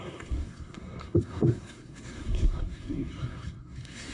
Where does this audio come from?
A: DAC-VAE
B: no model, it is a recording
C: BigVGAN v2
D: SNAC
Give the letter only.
D